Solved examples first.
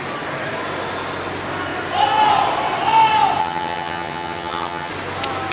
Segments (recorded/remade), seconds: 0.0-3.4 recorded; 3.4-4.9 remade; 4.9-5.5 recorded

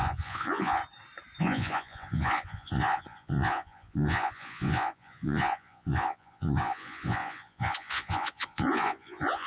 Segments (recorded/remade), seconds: 0.0-0.8 remade; 0.8-1.4 recorded; 1.4-9.5 remade

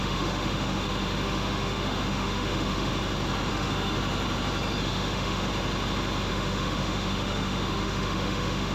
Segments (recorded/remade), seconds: 0.0-2.9 remade; 2.9-3.5 recorded; 3.5-4.0 remade; 4.0-4.8 recorded; 4.8-5.5 remade; 5.5-6.3 recorded; 6.3-8.7 remade

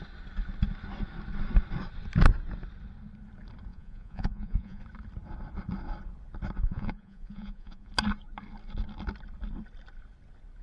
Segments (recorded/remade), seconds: 0.0-3.7 recorded; 3.7-4.8 remade; 4.8-6.6 recorded; 6.6-7.9 remade; 7.9-10.6 recorded